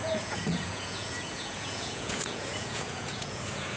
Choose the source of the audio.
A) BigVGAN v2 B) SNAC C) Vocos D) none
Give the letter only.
C